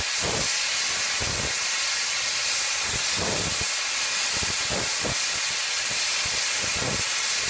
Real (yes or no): yes